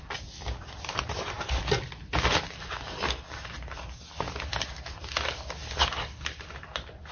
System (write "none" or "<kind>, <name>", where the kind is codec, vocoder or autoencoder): none